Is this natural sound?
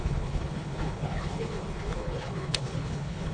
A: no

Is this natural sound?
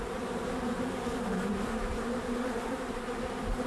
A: no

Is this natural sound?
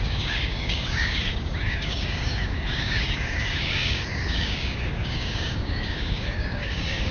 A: no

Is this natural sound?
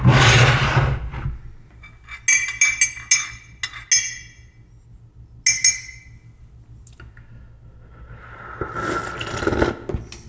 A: yes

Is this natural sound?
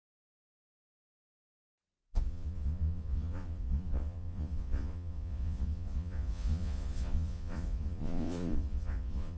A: no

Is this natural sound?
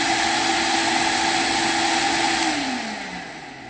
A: yes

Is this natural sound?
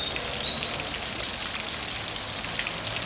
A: yes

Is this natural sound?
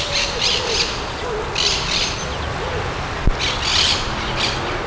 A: yes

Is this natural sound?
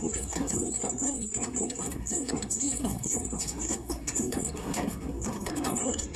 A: no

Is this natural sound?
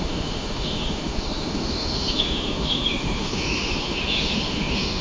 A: no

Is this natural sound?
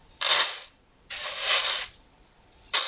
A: yes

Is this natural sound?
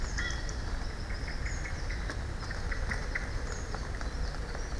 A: yes